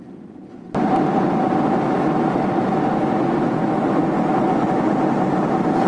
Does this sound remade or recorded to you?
recorded